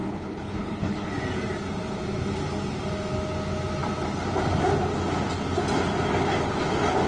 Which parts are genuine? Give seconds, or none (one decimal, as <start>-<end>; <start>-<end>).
1.1-7.1